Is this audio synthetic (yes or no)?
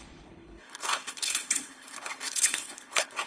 yes